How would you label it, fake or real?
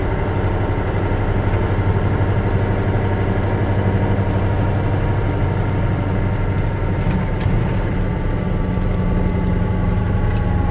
real